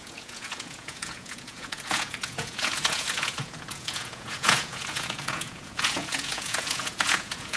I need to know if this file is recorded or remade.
remade